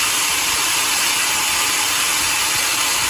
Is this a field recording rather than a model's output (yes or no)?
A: yes